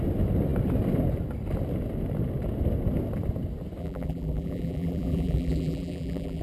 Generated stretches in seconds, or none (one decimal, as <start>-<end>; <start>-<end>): 3.8-6.4